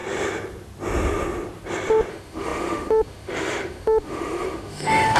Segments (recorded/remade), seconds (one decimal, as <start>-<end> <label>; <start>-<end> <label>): 0.0-2.1 recorded; 2.1-5.2 remade